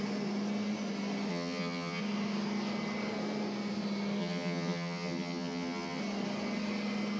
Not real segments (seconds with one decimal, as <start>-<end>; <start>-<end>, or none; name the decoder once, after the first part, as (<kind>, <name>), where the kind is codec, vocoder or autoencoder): 1.3-2.0 (vocoder, HiFi-GAN); 4.2-6.0